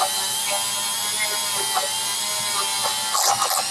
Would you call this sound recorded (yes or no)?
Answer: yes